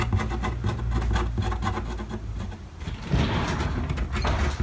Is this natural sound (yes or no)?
yes